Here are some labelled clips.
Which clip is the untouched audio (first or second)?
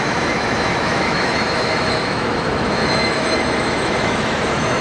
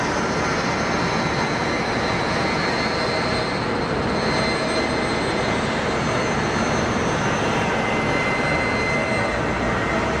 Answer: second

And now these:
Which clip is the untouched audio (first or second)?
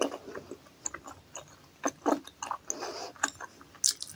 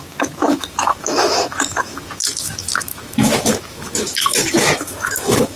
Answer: first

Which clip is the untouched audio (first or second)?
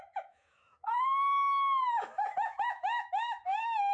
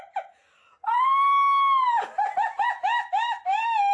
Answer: second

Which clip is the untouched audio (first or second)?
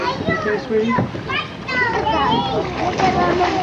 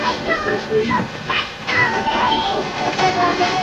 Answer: first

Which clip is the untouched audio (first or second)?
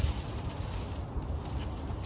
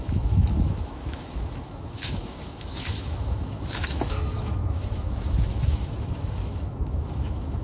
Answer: first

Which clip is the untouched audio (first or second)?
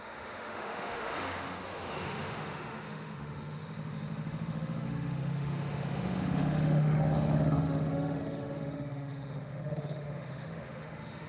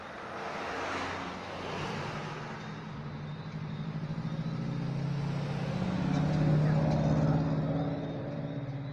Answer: second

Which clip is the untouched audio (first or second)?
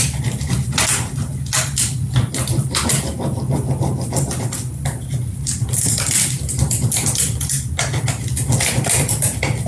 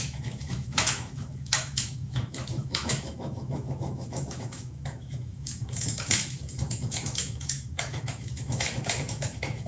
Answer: first